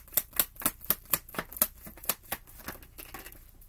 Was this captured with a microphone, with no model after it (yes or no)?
yes